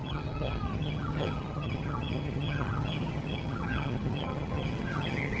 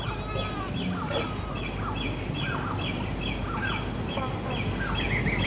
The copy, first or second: first